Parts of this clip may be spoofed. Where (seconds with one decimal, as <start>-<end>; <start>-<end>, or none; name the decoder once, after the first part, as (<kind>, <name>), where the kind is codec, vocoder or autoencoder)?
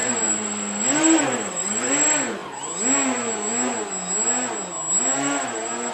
0.0-1.9 (vocoder, BigVGAN v2)